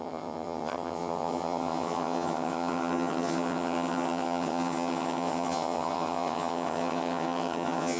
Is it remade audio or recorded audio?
remade